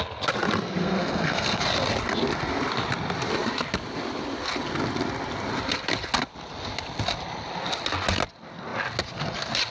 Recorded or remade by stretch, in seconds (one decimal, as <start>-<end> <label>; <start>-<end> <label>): 0.0-0.8 recorded; 0.8-1.6 remade; 1.6-9.7 recorded